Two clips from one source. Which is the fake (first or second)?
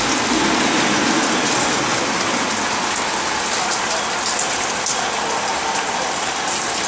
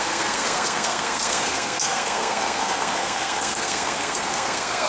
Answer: second